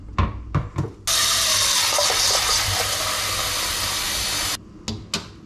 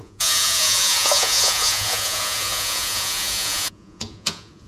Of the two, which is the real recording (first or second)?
first